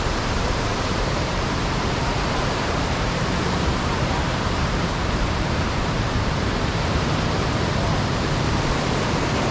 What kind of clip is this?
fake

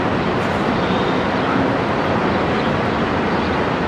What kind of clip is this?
real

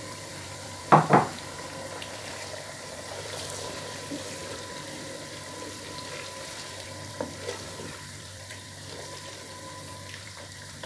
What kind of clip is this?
fake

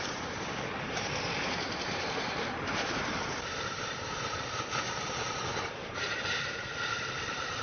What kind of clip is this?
fake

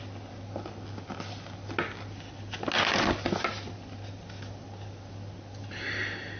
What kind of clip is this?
real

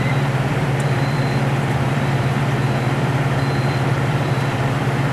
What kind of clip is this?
fake